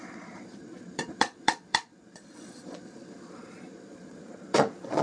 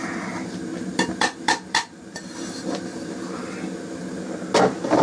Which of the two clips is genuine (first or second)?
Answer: second